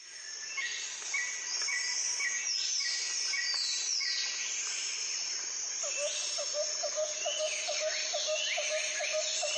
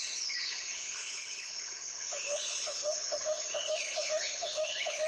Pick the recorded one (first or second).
first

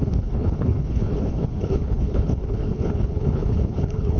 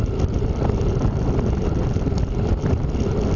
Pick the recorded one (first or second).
second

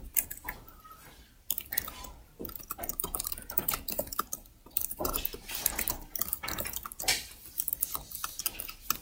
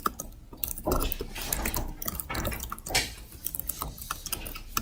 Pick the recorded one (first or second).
second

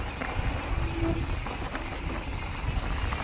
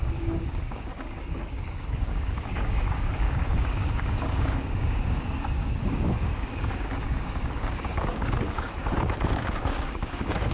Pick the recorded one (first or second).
first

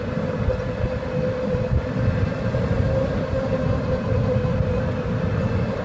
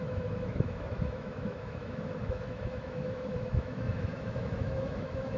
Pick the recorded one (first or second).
first